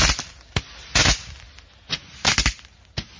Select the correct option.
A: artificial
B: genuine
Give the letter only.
B